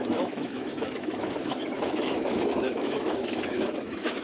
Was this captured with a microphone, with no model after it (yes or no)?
no